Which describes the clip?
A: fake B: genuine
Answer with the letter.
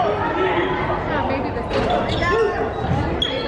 B